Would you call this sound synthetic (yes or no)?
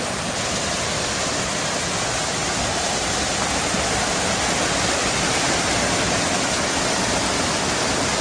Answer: no